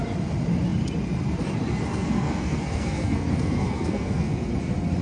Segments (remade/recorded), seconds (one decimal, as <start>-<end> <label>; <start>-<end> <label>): 0.0-1.9 recorded; 1.9-4.5 remade; 4.5-5.0 recorded